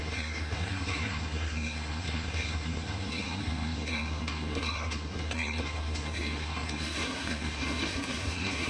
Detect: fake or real fake